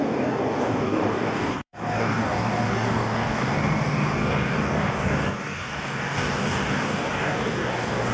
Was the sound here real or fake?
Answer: fake